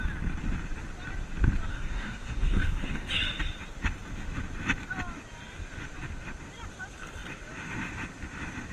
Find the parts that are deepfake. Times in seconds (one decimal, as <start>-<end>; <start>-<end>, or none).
1.7-3.1